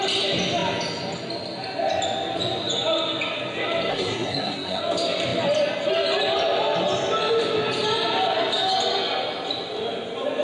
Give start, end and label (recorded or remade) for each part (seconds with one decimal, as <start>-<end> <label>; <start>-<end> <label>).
0.0-3.9 recorded; 3.9-4.8 remade; 4.8-10.4 recorded